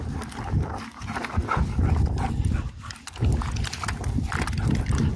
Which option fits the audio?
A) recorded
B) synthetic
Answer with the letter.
A